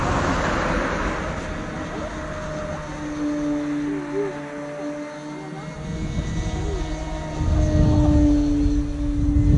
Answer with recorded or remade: recorded